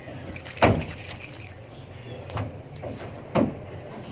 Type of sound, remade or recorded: recorded